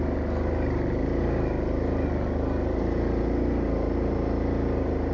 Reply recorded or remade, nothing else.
recorded